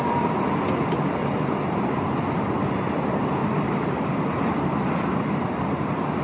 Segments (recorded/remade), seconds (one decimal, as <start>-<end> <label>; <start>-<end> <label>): 0.0-1.2 recorded; 1.2-2.0 remade; 2.0-3.4 recorded; 3.4-6.2 remade

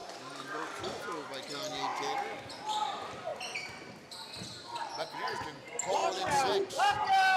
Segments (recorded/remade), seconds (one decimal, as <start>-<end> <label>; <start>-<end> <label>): 0.0-1.0 remade; 1.0-7.4 recorded

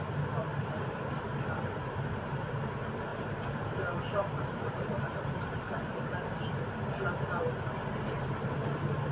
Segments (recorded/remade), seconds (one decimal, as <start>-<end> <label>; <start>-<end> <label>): 0.0-0.5 recorded; 0.5-2.3 remade; 2.3-3.1 recorded; 3.1-6.5 remade; 6.5-9.1 recorded

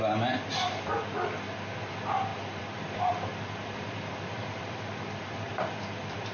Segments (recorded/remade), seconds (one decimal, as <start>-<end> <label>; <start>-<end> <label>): 0.0-2.3 recorded; 2.3-5.8 remade; 5.8-6.3 recorded